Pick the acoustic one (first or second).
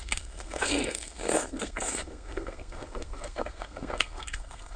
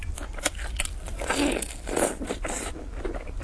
second